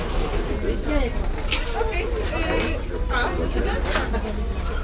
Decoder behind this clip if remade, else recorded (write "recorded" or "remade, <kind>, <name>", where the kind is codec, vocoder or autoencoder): recorded